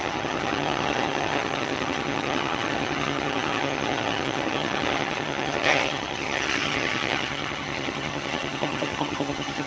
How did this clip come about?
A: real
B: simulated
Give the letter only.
B